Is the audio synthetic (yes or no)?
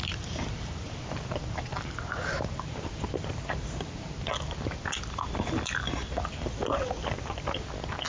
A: no